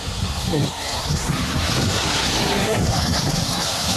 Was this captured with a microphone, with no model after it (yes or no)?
no